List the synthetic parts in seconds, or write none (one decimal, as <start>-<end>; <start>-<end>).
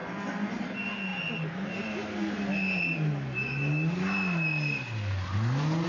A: none